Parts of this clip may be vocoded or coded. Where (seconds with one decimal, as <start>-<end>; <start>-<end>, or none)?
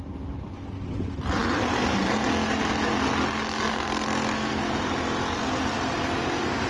3.7-4.7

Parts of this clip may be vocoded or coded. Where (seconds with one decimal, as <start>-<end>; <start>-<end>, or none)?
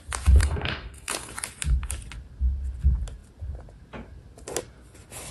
0.4-1.3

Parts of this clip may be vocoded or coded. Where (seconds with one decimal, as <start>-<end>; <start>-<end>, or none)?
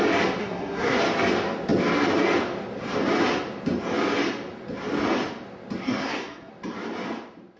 0.4-1.0; 5.8-6.5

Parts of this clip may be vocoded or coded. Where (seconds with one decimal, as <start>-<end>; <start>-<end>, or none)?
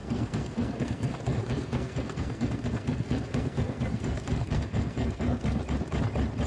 0.0-5.6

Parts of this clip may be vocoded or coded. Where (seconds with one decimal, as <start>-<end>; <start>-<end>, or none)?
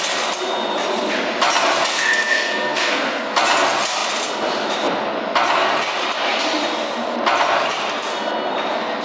1.9-3.2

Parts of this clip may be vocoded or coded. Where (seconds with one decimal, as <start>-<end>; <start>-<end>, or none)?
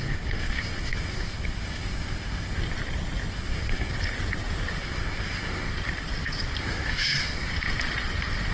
0.0-2.6; 3.3-3.9; 4.8-5.7; 6.6-7.5